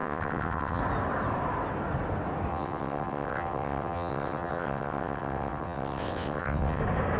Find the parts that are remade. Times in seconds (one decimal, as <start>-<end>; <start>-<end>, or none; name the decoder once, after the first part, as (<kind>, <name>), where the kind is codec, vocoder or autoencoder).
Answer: 0.0-0.8 (vocoder, WaveNeXt); 2.5-6.8

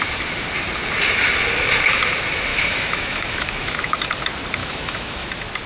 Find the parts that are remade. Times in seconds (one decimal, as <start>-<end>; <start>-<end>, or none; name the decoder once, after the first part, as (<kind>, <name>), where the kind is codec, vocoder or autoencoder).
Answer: 2.5-4.1 (autoencoder, DAC-VAE); 4.6-5.3

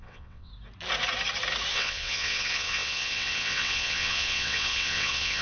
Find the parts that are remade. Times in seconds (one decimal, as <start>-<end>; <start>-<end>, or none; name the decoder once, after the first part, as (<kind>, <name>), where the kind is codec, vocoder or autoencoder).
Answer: 0.0-0.5 (vocoder, WaveNeXt); 1.7-5.4